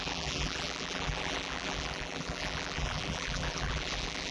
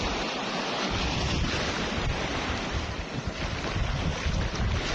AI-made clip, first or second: first